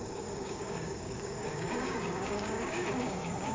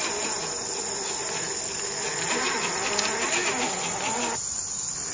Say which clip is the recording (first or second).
second